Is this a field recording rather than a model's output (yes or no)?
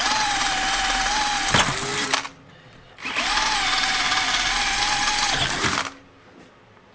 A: yes